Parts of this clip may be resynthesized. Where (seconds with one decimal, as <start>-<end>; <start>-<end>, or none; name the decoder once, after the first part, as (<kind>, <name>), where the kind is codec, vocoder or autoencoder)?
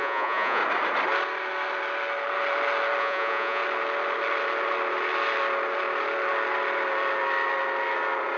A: 0.0-0.6 (vocoder, Vocos); 3.0-3.6